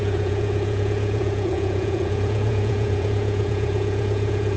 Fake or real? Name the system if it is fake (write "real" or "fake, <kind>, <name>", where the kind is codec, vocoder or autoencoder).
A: fake, vocoder, Vocos